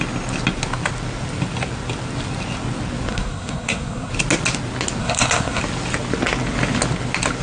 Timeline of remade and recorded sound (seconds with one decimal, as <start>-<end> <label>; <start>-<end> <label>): 0.0-3.1 recorded; 3.1-4.1 remade; 4.1-5.0 recorded; 5.0-5.6 remade; 5.6-7.4 recorded